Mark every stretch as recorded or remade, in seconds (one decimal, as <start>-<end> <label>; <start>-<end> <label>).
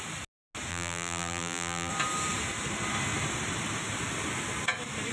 0.0-0.7 recorded; 0.7-1.9 remade; 1.9-5.1 recorded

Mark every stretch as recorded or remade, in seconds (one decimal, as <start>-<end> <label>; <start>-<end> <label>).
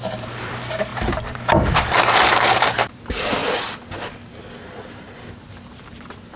0.0-3.4 remade; 3.4-4.6 recorded; 4.6-6.4 remade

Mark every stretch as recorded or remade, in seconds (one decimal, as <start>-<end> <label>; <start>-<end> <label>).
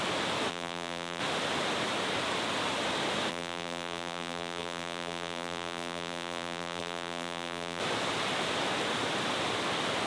0.0-0.5 recorded; 0.5-1.2 remade; 1.2-3.3 recorded; 3.3-7.8 remade; 7.8-10.1 recorded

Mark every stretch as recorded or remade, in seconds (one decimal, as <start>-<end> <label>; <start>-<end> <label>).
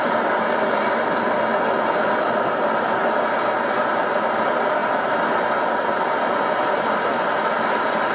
0.0-4.8 recorded; 4.8-6.3 remade; 6.3-8.1 recorded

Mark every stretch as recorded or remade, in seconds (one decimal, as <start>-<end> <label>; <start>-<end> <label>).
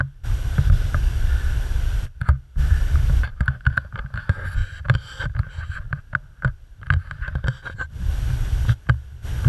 0.0-4.6 recorded; 4.6-5.6 remade; 5.6-7.6 recorded; 7.6-8.1 remade; 8.1-9.5 recorded